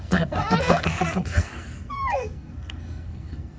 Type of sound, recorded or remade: remade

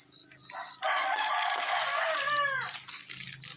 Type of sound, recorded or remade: recorded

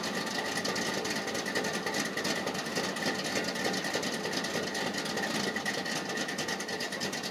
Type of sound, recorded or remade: recorded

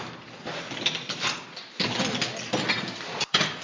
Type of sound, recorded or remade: recorded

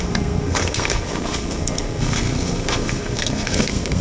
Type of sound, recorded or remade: remade